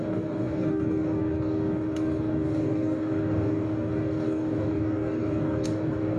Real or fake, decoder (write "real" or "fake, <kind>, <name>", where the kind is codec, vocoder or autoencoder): fake, codec, DAC